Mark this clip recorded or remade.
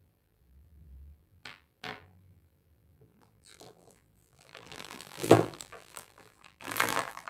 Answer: remade